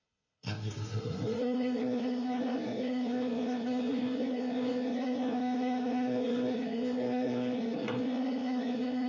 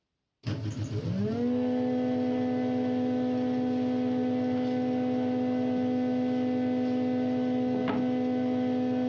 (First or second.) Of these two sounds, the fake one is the first